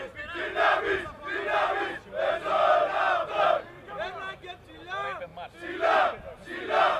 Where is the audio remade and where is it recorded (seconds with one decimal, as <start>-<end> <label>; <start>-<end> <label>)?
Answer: 0.0-7.0 recorded